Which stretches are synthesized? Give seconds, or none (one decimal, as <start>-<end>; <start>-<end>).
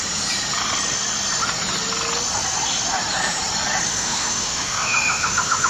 3.9-5.7